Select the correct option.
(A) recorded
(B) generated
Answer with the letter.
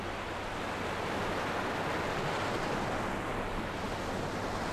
A